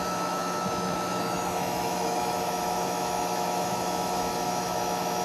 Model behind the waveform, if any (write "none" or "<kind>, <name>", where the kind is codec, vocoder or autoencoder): autoencoder, DAC-VAE